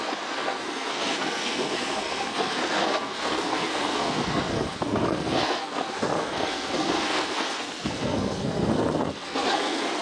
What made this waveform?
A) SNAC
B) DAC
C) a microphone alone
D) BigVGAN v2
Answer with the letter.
A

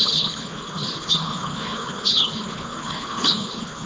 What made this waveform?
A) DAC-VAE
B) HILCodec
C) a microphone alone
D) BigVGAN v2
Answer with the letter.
B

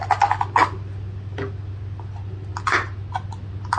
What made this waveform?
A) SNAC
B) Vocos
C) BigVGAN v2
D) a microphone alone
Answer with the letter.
D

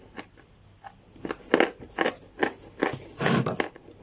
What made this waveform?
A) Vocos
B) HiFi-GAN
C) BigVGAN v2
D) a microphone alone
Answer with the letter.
D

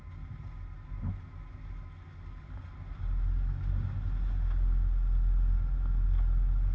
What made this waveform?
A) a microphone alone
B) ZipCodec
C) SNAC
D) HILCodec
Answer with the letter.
A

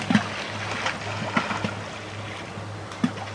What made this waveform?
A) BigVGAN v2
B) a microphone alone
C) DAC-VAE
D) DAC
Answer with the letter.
B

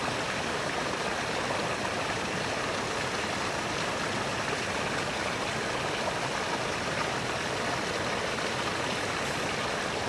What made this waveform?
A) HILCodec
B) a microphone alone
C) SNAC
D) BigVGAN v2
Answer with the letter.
B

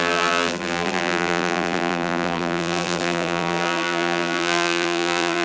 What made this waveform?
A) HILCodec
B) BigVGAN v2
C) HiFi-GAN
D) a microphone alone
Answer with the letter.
B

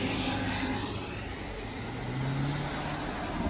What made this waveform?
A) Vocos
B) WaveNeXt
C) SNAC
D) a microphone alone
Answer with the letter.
D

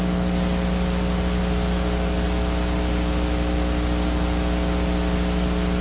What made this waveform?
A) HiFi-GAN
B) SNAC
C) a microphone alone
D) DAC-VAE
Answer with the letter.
C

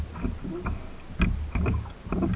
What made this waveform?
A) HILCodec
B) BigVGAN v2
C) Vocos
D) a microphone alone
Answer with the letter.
D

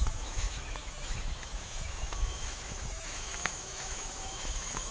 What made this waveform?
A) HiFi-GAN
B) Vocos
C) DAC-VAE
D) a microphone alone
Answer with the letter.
C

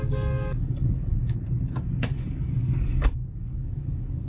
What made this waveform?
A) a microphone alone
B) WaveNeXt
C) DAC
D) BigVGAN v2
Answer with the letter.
C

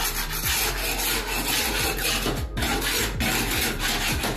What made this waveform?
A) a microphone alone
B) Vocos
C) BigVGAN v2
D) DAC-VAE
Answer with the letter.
A